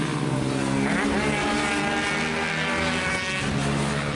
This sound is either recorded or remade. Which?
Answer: recorded